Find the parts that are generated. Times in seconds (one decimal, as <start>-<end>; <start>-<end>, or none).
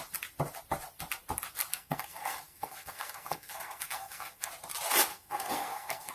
1.7-4.5; 5.1-6.1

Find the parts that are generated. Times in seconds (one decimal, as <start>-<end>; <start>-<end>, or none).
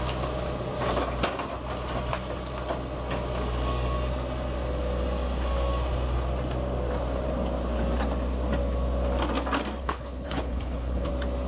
9.8-11.1